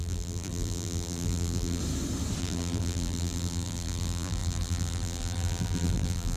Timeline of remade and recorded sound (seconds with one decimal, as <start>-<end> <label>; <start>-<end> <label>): 0.0-1.8 remade; 1.8-2.4 recorded; 2.4-6.4 remade